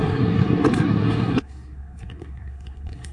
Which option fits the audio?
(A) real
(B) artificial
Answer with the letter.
B